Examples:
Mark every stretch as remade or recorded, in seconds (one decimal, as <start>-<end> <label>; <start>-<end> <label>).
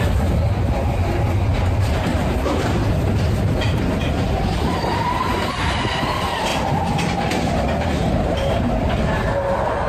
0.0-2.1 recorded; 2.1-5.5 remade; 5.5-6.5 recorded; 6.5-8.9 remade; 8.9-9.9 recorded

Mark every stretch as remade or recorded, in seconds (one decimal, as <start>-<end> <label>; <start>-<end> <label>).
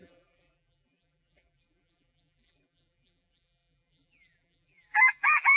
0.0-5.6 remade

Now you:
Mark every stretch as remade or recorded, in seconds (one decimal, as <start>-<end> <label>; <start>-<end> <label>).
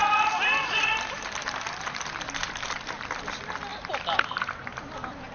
0.0-3.2 remade; 3.2-3.7 recorded; 3.7-5.3 remade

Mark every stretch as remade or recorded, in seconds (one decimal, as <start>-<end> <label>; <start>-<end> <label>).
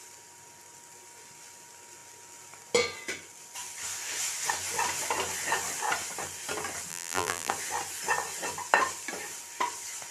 0.0-6.9 recorded; 6.9-7.5 remade; 7.5-10.1 recorded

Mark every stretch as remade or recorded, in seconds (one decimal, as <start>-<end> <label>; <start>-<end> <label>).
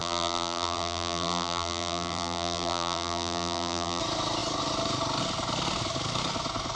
0.0-4.0 remade; 4.0-6.7 recorded